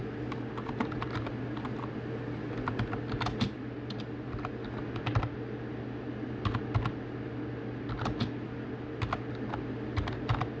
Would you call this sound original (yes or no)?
yes